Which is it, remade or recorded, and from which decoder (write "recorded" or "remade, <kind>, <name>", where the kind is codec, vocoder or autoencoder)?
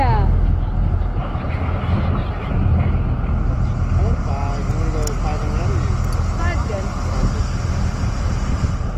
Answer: recorded